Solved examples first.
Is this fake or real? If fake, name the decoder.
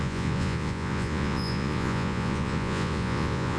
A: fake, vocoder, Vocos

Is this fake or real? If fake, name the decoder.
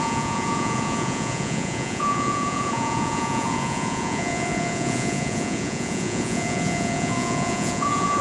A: fake, vocoder, Vocos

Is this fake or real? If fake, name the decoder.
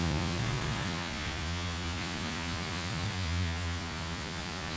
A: fake, vocoder, Vocos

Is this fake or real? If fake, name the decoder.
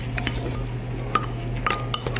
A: real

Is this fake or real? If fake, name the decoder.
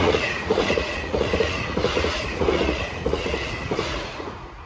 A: fake, vocoder, Vocos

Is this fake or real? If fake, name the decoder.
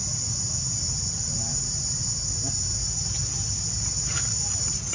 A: real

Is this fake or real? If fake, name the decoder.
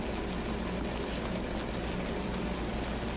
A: real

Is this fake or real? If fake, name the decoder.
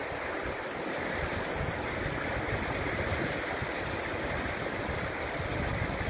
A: real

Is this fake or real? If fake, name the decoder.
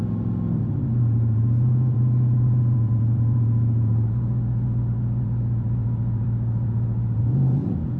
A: fake, vocoder, Vocos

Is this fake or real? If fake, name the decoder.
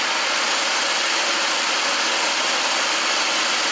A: real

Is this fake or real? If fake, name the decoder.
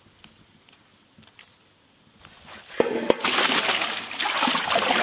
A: real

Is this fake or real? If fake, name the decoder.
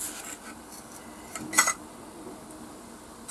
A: real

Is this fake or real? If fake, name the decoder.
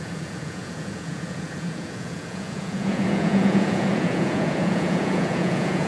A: fake, vocoder, Vocos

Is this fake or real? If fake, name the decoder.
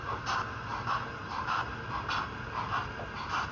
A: real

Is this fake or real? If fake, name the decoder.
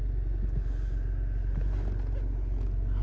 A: real